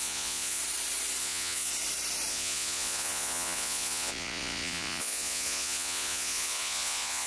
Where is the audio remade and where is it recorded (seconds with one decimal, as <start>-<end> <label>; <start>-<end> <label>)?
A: 0.0-0.6 remade; 0.6-1.2 recorded; 1.2-1.7 remade; 1.7-2.3 recorded; 2.3-7.3 remade